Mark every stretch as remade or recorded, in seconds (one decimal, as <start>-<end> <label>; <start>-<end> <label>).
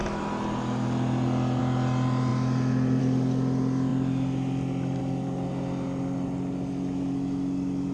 0.0-7.9 recorded